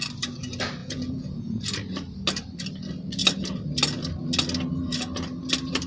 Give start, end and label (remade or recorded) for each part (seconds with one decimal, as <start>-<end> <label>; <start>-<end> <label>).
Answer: 0.0-0.8 recorded; 0.8-1.6 remade; 1.6-5.9 recorded